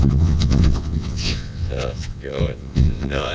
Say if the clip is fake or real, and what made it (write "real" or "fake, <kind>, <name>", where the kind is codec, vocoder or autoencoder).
fake, vocoder, WaveNeXt